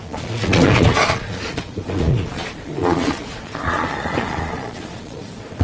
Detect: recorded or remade remade